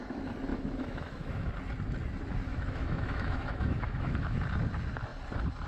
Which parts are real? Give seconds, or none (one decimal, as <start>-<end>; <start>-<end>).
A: 0.0-0.5; 1.5-2.5; 4.4-5.7